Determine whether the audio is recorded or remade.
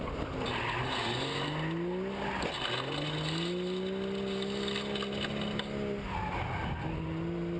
recorded